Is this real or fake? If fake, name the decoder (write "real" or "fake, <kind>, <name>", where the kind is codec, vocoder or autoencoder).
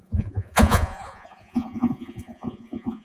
fake, vocoder, Vocos